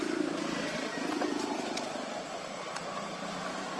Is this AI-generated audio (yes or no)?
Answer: no